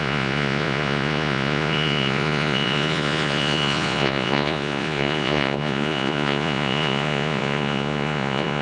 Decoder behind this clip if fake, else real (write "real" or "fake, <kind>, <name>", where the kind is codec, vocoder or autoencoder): fake, vocoder, Vocos